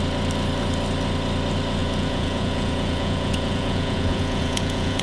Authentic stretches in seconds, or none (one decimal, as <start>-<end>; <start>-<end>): 0.0-1.8